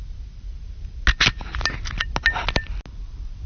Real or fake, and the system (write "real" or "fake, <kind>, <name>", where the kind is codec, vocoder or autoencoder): real